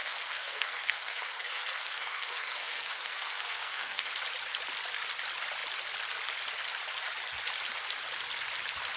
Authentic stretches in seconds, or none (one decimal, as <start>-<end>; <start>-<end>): 4.1-9.0